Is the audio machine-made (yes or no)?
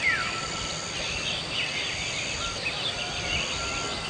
no